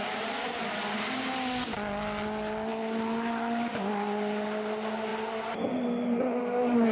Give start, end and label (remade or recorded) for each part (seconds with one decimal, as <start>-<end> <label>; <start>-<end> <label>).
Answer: 0.0-6.9 recorded